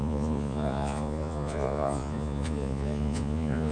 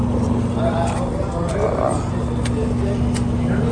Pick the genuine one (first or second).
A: second